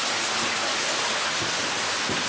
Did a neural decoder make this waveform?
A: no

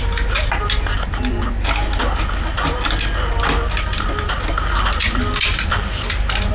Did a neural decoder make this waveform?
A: no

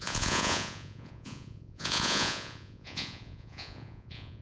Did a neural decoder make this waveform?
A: yes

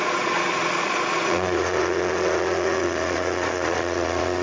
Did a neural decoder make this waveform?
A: yes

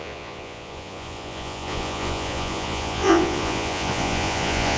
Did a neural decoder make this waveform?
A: yes